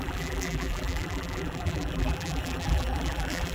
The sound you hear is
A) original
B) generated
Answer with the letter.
B